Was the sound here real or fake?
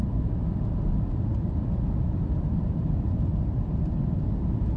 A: fake